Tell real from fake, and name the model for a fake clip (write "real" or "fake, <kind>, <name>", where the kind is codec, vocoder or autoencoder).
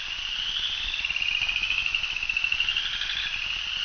real